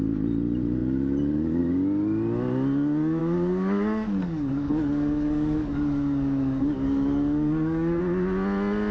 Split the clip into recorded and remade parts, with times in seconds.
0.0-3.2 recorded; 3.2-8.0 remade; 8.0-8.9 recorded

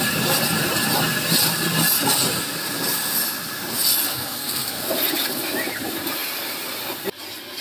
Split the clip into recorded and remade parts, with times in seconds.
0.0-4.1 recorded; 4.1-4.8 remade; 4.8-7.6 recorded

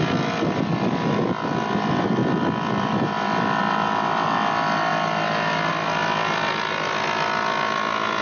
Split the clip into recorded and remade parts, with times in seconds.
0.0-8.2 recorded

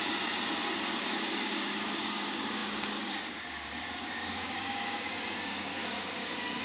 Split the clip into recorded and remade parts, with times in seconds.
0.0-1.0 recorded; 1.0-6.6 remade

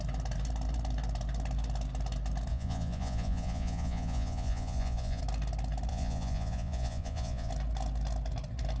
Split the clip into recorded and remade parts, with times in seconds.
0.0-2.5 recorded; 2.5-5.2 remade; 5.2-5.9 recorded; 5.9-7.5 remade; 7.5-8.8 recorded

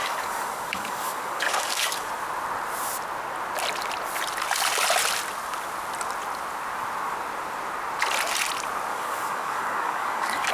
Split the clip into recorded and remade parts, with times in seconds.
0.0-2.1 remade; 2.1-8.9 recorded; 8.9-10.5 remade

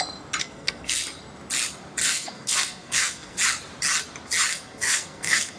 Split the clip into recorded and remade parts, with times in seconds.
0.0-0.4 recorded; 0.4-1.0 remade; 1.0-2.0 recorded; 2.0-3.4 remade; 3.4-4.5 recorded; 4.5-5.6 remade